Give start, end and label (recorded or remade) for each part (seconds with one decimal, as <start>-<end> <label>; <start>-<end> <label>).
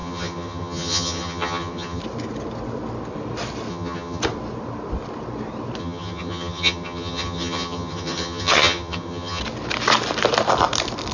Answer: 0.0-2.0 remade; 2.0-3.7 recorded; 3.7-4.2 remade; 4.2-5.8 recorded; 5.8-9.4 remade; 9.4-11.1 recorded